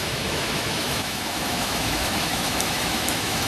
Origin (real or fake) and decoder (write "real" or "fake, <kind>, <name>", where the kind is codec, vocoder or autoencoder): fake, autoencoder, DAC-VAE